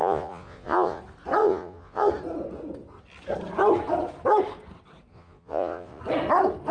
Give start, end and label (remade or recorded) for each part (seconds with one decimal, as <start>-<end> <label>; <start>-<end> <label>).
0.0-1.0 remade; 1.0-1.4 recorded; 1.4-2.1 remade; 2.1-5.1 recorded; 5.1-6.0 remade; 6.0-6.7 recorded